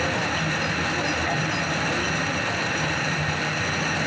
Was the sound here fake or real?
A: real